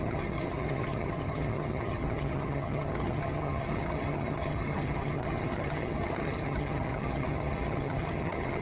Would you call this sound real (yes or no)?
no